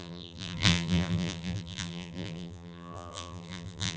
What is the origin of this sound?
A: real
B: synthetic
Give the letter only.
B